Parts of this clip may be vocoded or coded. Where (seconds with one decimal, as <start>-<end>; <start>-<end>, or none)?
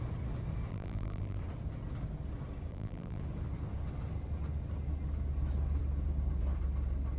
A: 0.7-1.4; 2.7-3.2